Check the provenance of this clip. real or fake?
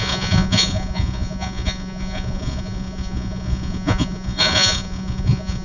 fake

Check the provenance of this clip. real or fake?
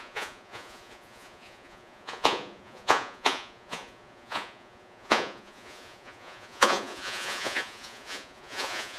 fake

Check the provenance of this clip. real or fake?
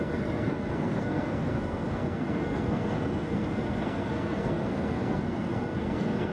fake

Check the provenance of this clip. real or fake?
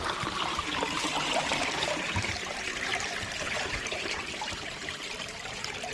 fake